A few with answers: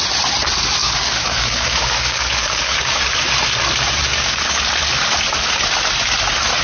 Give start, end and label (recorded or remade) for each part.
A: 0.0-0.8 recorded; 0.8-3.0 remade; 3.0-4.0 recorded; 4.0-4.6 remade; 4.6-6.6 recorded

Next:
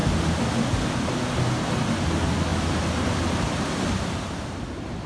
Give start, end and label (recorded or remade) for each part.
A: 0.0-5.1 recorded

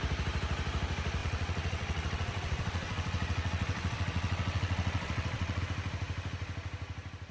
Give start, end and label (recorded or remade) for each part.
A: 0.0-1.2 recorded; 1.2-5.6 remade; 5.6-7.3 recorded

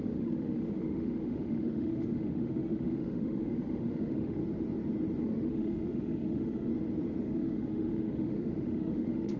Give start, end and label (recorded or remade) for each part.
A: 0.0-4.4 remade; 4.4-5.2 recorded; 5.2-6.7 remade; 6.7-7.2 recorded; 7.2-9.4 remade

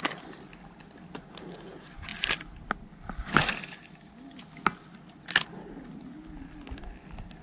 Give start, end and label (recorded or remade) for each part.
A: 0.0-7.4 recorded